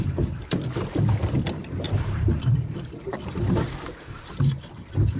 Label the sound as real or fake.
fake